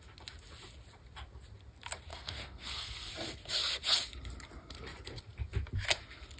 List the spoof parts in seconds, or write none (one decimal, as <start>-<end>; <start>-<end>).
2.1-3.1